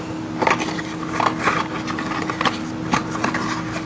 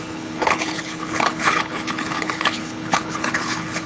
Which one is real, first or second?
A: first